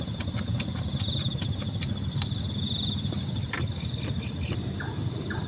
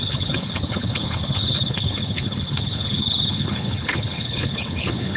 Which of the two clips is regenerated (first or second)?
second